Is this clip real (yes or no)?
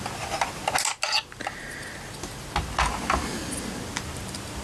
yes